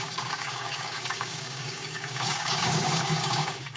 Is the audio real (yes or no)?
no